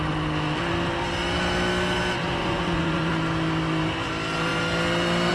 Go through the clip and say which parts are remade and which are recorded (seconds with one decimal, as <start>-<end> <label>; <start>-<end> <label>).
0.0-2.4 recorded; 2.4-3.1 remade; 3.1-5.3 recorded